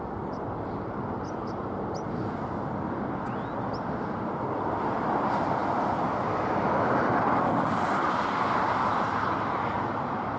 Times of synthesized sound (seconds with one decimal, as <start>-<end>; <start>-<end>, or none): none